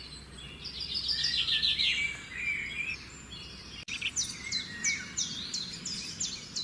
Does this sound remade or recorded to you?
recorded